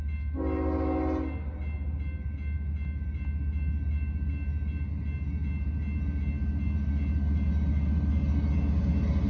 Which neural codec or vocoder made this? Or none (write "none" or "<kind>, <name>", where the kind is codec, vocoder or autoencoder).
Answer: none